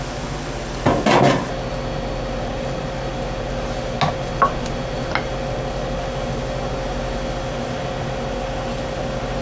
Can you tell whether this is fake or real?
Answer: real